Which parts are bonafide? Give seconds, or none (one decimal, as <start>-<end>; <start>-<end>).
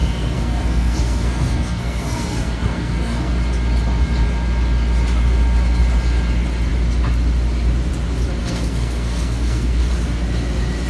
3.3-8.4; 9.9-10.9